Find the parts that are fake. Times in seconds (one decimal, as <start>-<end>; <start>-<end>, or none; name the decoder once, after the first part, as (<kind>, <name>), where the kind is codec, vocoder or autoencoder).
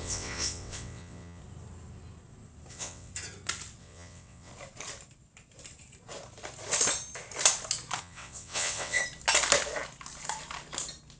0.0-1.4 (vocoder, WaveNeXt); 2.7-3.1; 3.8-4.5; 8.0-9.0